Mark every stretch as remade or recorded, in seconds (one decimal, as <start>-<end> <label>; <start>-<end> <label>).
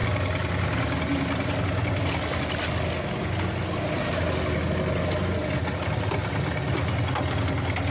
0.0-7.9 recorded